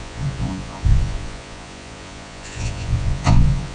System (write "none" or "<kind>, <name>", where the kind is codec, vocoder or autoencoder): vocoder, Vocos